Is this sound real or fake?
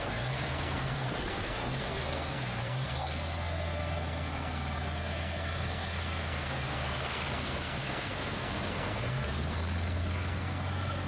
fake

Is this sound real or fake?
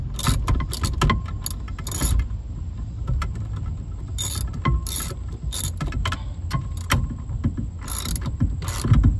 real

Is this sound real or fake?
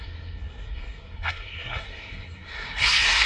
fake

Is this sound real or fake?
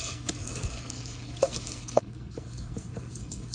fake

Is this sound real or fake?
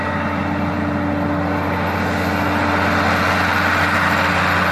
real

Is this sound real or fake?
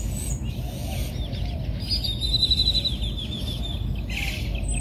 real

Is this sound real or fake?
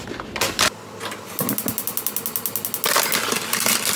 real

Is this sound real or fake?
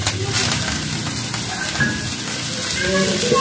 real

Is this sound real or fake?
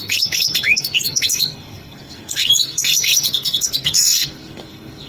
fake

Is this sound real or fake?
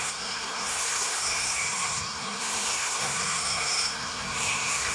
fake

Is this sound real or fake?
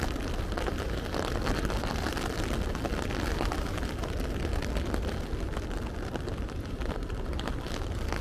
real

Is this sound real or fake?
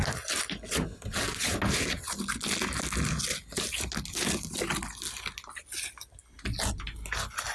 real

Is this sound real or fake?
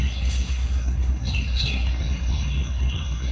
fake